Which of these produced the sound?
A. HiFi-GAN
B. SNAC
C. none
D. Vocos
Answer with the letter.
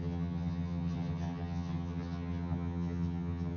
A